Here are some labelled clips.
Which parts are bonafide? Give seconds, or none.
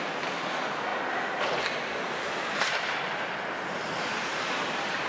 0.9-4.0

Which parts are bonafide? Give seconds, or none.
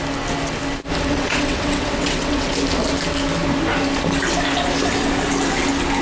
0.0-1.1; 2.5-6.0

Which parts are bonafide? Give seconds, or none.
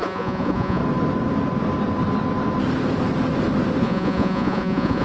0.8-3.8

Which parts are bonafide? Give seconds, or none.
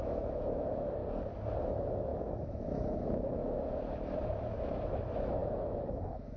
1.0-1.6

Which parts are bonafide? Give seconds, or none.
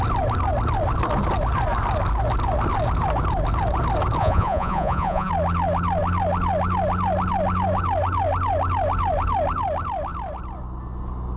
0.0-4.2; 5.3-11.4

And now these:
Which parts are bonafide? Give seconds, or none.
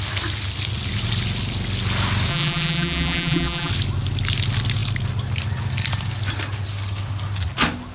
0.0-2.3; 3.7-7.9